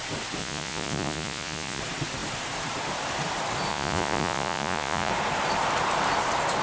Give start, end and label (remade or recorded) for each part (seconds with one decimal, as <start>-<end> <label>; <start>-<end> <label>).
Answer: 0.0-0.4 recorded; 0.4-1.8 remade; 1.8-3.7 recorded; 3.7-5.1 remade; 5.1-6.6 recorded

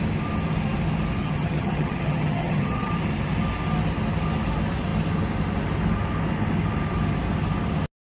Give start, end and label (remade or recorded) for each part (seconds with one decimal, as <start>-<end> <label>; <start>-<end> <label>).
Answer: 0.0-1.2 recorded; 1.2-2.9 remade; 2.9-8.1 recorded